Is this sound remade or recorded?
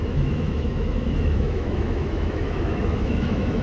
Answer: remade